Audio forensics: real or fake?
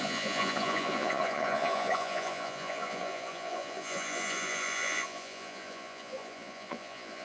fake